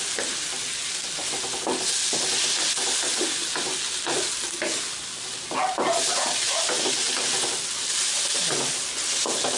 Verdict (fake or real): real